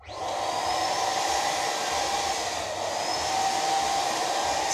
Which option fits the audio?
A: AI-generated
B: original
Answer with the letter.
B